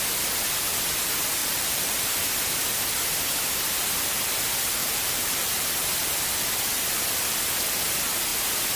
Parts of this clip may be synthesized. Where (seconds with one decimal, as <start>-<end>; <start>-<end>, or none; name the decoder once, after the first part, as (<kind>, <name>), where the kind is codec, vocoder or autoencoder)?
1.4-2.0 (vocoder, BigVGAN v2); 4.8-5.6